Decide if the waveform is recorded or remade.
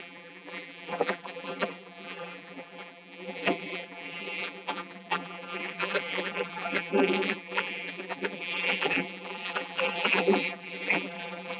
remade